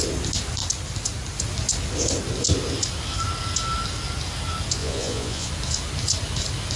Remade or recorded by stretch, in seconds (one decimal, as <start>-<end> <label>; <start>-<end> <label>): 0.0-4.8 recorded; 4.8-5.5 remade; 5.5-6.8 recorded

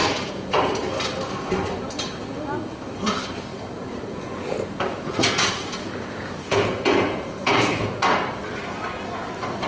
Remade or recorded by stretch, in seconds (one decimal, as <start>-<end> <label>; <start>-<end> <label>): 0.0-0.6 remade; 0.6-3.5 recorded; 3.5-7.9 remade; 7.9-9.7 recorded

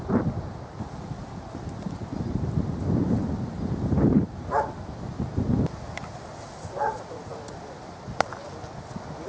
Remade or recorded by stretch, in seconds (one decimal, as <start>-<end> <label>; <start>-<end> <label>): 0.0-9.3 recorded

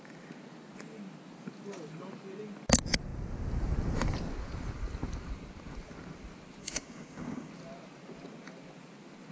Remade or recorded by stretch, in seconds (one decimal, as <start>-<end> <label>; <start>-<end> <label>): 0.0-6.6 recorded; 6.6-7.5 remade; 7.5-9.3 recorded